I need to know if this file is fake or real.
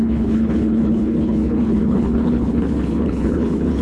fake